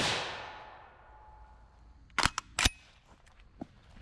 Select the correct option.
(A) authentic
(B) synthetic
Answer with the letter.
A